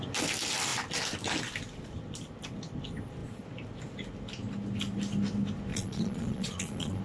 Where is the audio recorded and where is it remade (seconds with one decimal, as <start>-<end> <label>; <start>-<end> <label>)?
0.0-5.7 recorded; 5.7-7.0 remade